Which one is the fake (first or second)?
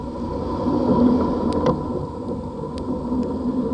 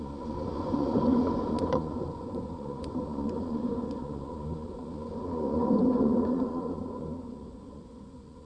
second